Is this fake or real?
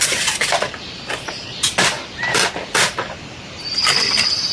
fake